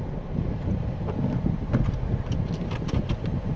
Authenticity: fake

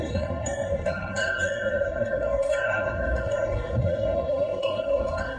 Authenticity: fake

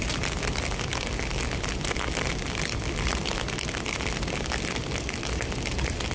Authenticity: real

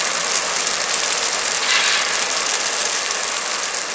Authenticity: real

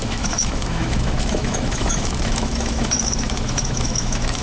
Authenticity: fake